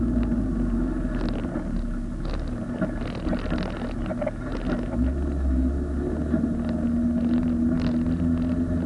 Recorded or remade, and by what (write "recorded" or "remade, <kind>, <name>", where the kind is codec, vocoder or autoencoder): recorded